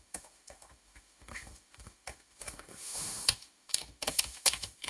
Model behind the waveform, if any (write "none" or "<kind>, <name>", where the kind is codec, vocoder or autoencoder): autoencoder, DAC-VAE